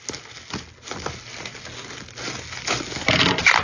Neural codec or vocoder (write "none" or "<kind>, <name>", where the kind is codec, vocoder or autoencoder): none